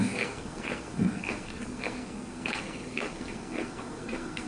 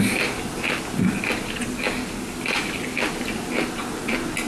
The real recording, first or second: second